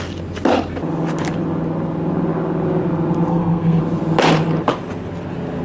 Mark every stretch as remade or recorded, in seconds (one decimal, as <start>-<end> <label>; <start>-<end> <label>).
0.0-3.3 recorded; 3.3-3.8 remade; 3.8-5.6 recorded